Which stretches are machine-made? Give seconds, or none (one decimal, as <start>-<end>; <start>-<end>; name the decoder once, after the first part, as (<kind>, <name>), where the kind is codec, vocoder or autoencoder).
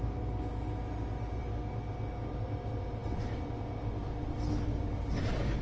none